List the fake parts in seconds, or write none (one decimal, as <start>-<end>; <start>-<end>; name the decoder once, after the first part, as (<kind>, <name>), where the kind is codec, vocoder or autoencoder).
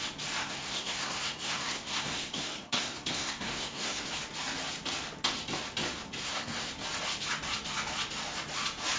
0.4-4.1 (codec, SNAC); 6.2-6.7